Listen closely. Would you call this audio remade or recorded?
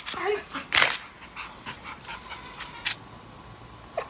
recorded